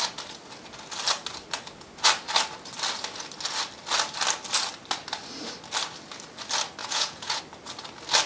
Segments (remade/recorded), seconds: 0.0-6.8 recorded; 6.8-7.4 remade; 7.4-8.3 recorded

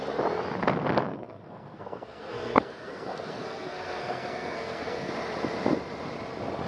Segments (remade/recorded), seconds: 0.0-1.1 recorded; 1.1-5.1 remade; 5.1-6.7 recorded

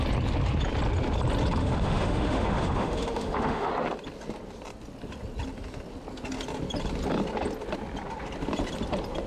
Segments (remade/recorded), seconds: 0.0-1.6 recorded; 1.6-3.7 remade; 3.7-9.3 recorded

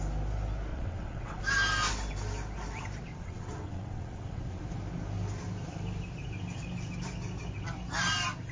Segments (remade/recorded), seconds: 0.0-0.7 recorded; 0.7-1.4 remade; 1.4-3.1 recorded; 3.1-4.6 remade; 4.6-8.5 recorded

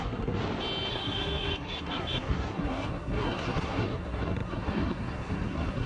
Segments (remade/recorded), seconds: 0.0-0.4 remade; 0.4-0.9 recorded; 0.9-5.9 remade